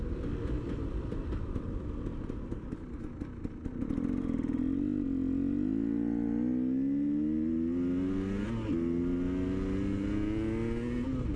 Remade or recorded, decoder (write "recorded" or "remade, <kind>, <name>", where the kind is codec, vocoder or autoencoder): recorded